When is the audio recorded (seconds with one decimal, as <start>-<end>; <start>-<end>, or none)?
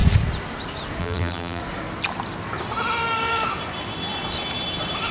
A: 0.0-1.0; 1.6-5.1